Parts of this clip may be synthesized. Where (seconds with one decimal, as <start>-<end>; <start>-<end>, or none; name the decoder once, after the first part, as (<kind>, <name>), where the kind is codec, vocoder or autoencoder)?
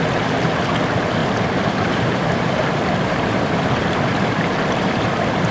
0.0-0.6 (vocoder, BigVGAN v2); 1.2-4.5